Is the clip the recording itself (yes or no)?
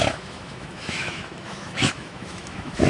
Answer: no